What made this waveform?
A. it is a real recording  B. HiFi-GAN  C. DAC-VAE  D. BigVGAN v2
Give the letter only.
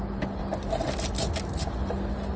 A